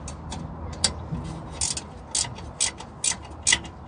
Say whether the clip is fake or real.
real